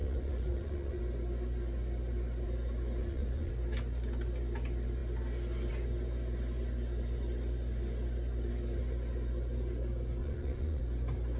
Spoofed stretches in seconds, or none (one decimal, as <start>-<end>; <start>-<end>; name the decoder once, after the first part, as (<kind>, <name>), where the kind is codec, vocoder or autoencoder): 0.0-1.0 (vocoder, Vocos); 3.0-3.5; 10.2-10.8